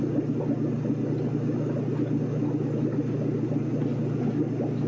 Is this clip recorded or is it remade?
recorded